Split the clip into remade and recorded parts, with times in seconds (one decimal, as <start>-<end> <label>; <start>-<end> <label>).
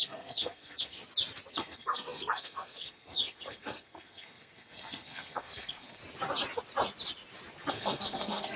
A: 0.0-1.0 remade; 1.0-1.5 recorded; 1.5-6.0 remade; 6.0-7.7 recorded; 7.7-8.6 remade